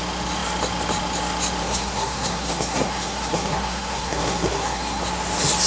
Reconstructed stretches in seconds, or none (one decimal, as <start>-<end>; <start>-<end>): 1.6-5.0